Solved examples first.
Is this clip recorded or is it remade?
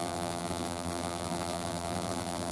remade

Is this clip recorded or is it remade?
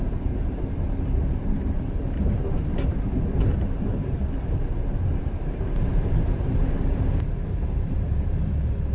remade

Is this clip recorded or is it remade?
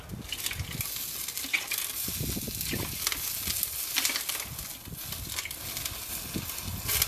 recorded